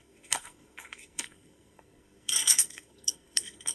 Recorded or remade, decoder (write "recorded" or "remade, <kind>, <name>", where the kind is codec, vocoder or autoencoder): remade, codec, SNAC